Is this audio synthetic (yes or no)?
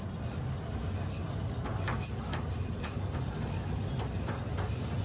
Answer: no